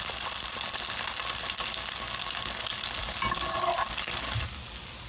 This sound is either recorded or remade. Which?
recorded